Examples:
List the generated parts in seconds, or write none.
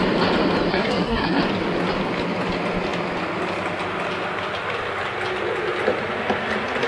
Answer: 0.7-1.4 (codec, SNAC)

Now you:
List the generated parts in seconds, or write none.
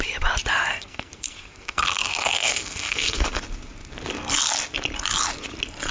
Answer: 0.7-3.4 (codec, SNAC)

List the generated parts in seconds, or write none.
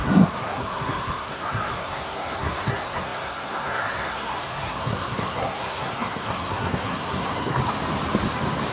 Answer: 0.0-7.6 (codec, SNAC)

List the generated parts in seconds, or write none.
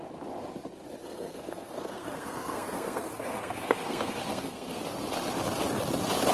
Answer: 1.0-4.8 (codec, SNAC)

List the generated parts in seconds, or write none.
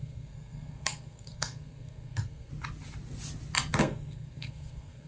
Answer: 0.0-2.5 (codec, SNAC); 3.8-5.1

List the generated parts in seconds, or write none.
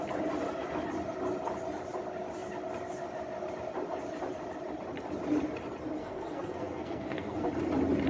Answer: 6.0-7.5 (codec, SNAC)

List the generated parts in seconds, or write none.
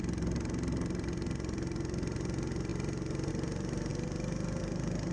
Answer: none